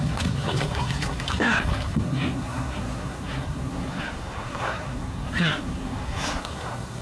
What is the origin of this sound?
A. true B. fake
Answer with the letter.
B